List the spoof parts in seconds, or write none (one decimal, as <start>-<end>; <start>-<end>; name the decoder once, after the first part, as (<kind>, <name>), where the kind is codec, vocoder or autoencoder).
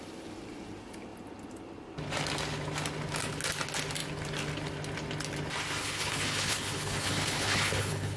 5.8-8.2 (codec, HILCodec)